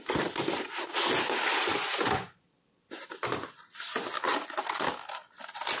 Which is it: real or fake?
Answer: real